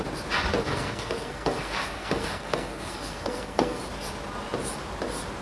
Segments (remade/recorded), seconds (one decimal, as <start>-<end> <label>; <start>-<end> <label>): 0.0-0.7 recorded; 0.7-3.8 remade; 3.8-5.4 recorded